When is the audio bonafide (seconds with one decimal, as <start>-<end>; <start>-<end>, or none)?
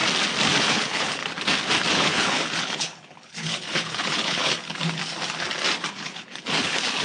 0.0-0.7; 1.2-1.9; 5.0-5.9